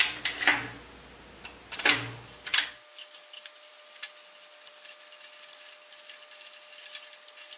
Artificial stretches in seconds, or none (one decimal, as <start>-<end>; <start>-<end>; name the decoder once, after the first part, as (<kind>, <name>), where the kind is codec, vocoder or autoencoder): none

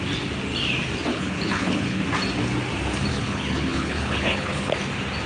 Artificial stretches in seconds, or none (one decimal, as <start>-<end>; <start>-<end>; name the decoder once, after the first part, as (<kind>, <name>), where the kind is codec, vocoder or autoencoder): 1.1-2.0 (codec, HILCodec); 3.1-4.7

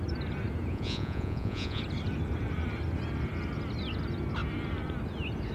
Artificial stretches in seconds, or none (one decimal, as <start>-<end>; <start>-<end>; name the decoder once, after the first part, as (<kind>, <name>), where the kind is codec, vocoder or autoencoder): 0.7-1.8 (vocoder, Vocos)

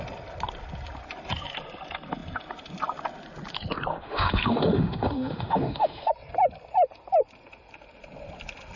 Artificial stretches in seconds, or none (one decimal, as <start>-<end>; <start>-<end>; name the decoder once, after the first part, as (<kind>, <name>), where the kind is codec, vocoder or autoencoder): 3.9-6.1 (autoencoder, DAC-VAE)

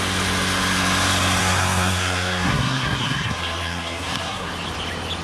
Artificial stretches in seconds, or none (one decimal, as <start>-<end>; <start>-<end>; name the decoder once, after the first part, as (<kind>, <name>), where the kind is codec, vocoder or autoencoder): 1.4-4.5 (codec, SNAC)

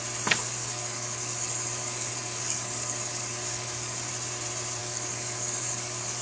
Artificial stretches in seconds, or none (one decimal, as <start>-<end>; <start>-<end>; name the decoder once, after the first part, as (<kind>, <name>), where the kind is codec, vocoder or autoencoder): 0.4-4.1 (codec, DAC); 4.8-6.2

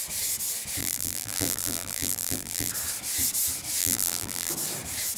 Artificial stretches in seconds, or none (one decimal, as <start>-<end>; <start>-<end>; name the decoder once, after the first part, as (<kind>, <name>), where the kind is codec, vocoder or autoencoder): 0.8-2.7 (vocoder, BigVGAN v2); 3.8-4.5